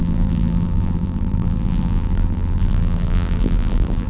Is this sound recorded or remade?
remade